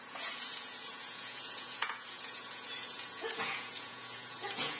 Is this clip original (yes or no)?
no